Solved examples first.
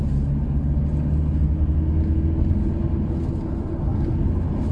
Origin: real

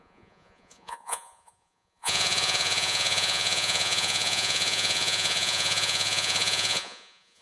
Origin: fake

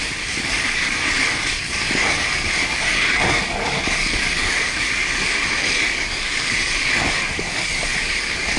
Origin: fake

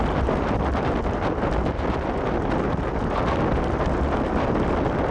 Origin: real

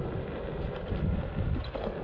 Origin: real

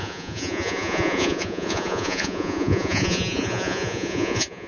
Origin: fake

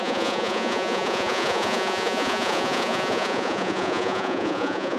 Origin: fake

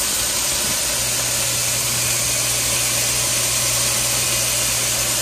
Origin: real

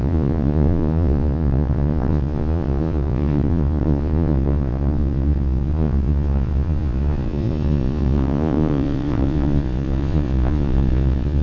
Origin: fake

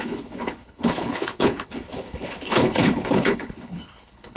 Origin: fake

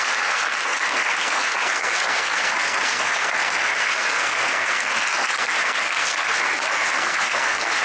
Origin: fake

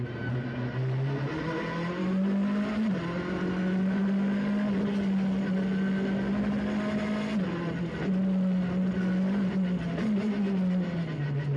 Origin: real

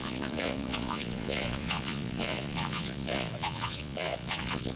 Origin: fake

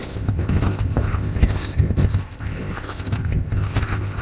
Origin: fake